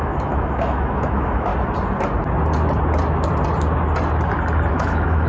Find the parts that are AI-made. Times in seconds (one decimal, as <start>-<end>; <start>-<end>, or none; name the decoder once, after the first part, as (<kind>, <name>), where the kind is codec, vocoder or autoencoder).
0.0-1.5 (autoencoder, DAC-VAE); 4.7-5.3